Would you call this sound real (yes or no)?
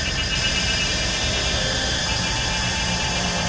no